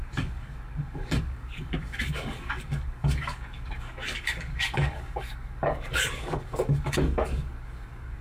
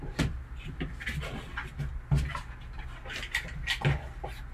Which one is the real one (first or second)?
second